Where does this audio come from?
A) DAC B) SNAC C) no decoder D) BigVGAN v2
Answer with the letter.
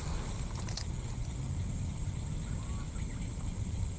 C